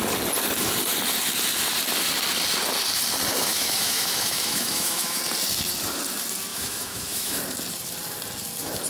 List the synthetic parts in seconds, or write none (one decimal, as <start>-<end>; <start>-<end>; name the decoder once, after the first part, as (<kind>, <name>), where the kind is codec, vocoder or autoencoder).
3.5-5.2 (autoencoder, DAC-VAE); 6.5-7.4